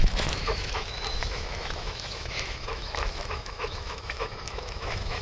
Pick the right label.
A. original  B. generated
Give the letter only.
B